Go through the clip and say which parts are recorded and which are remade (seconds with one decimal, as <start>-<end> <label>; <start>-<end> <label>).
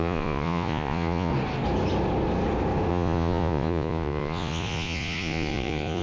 0.0-1.3 remade; 1.3-2.9 recorded; 2.9-6.0 remade